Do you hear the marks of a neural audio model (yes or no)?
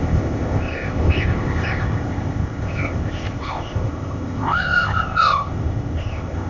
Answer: yes